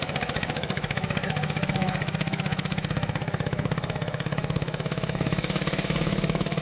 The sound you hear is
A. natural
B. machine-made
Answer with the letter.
B